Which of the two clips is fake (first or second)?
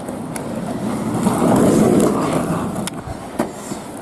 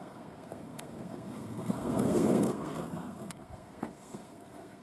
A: second